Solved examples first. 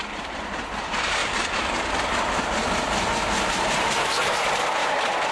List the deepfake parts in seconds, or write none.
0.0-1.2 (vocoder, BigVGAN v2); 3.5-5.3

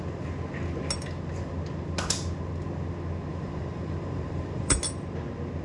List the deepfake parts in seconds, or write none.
3.3-4.8 (vocoder, BigVGAN v2)

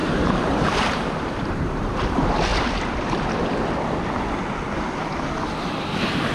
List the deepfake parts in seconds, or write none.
0.0-2.0 (vocoder, BigVGAN v2)